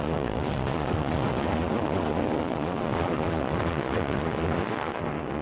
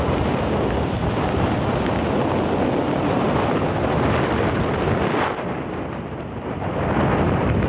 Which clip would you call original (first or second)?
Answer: second